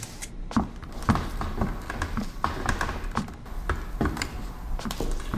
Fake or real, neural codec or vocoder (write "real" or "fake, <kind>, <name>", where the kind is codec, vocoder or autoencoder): real